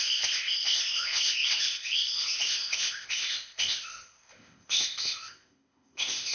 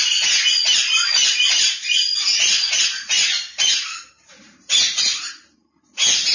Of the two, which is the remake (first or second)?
first